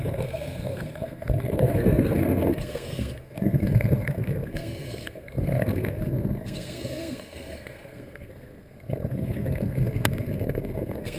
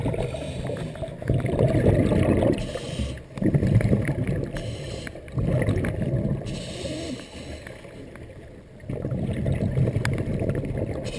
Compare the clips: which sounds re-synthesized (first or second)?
first